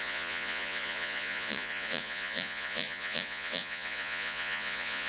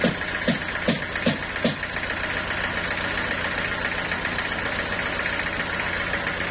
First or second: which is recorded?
second